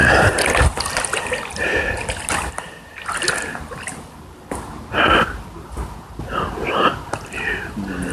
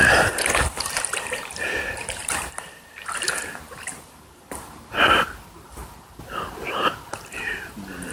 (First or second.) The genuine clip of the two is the first